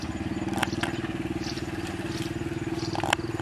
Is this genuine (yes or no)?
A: yes